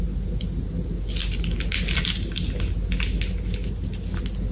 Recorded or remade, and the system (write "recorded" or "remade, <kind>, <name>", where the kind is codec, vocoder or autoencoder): recorded